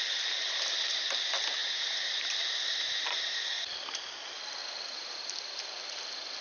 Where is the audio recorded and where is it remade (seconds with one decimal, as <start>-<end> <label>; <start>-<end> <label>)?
0.0-6.4 recorded